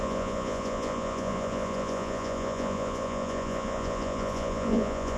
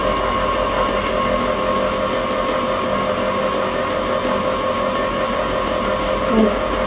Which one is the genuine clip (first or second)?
second